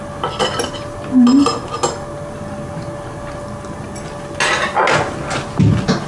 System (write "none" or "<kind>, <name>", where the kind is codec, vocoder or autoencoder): none